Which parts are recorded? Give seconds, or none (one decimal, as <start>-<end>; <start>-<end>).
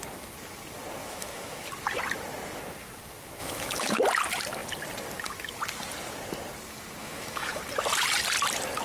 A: 0.0-1.0; 1.7-3.4; 4.0-7.0; 7.6-8.8